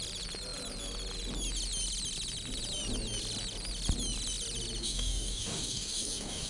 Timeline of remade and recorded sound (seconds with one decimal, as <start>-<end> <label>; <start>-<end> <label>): 0.0-4.8 recorded; 4.8-6.5 remade